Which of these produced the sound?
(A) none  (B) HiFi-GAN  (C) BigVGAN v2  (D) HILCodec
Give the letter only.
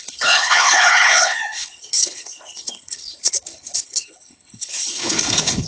D